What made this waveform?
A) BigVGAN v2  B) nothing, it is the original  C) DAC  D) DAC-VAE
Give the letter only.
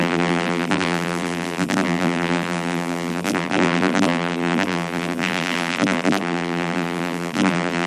A